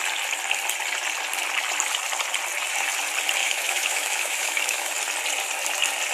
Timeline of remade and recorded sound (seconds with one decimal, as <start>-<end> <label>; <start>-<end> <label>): 0.0-3.4 recorded; 3.4-4.9 remade; 4.9-6.1 recorded